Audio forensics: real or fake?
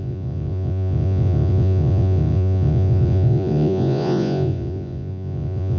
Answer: fake